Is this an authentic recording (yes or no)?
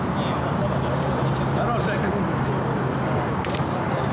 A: yes